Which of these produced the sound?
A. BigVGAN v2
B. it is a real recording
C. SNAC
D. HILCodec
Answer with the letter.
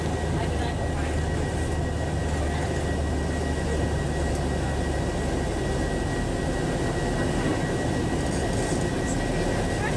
B